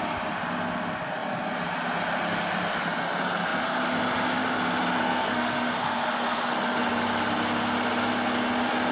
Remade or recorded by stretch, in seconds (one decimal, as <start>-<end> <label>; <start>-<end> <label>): 0.0-5.0 recorded; 5.0-6.5 remade; 6.5-8.9 recorded